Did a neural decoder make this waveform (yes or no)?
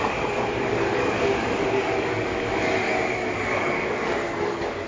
yes